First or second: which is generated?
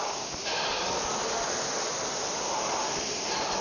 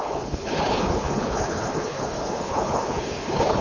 second